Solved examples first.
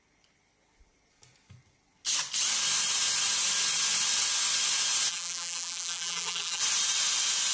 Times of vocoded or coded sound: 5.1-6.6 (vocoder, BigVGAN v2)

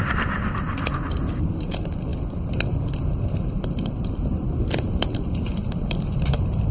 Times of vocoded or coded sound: 4.3-5.2 (vocoder, BigVGAN v2)

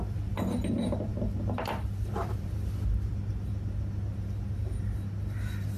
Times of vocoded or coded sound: 1.1-2.6 (vocoder, BigVGAN v2)

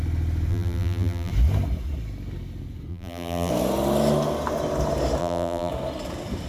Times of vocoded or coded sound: 0.5-1.3 (vocoder, BigVGAN v2); 2.9-3.5; 5.2-5.7

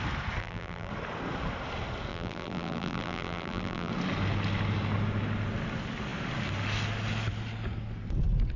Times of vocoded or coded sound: 0.4-0.9 (vocoder, BigVGAN v2); 2.1-3.9